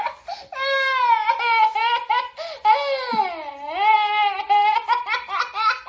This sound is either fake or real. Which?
real